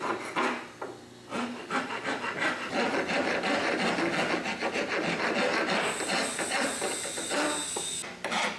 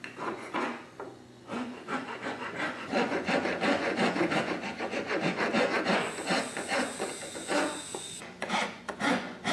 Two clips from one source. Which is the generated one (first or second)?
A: second